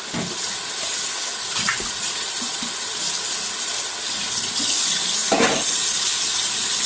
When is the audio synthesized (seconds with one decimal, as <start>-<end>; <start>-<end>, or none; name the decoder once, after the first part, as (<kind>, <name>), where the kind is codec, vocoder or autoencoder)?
none